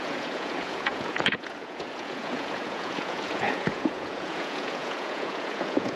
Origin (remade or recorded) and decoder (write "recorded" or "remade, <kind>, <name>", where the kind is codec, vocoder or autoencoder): remade, vocoder, Vocos